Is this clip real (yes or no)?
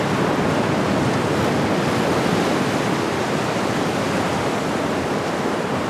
yes